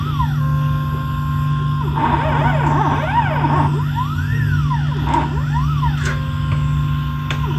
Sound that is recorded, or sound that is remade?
recorded